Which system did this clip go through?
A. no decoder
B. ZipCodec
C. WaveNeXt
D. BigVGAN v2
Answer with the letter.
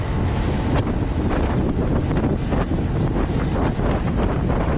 A